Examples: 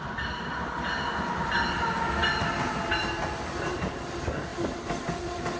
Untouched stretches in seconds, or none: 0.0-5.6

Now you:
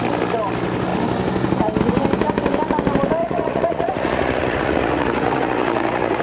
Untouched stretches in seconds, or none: 0.0-3.2

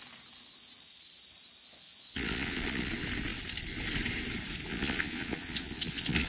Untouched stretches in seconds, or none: 0.0-1.6; 2.9-4.7

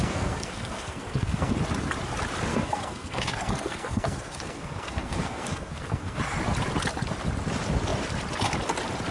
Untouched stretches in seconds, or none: 1.6-2.5; 6.2-9.1

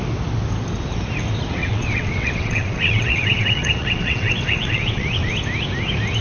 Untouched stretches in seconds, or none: 0.0-1.6; 5.3-6.2

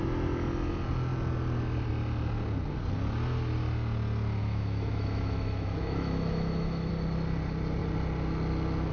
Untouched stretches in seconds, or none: 0.0-4.4; 6.9-8.9

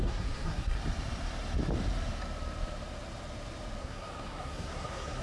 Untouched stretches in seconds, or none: 0.8-3.8

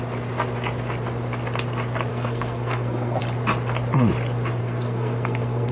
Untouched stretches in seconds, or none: 0.0-2.1; 3.2-4.6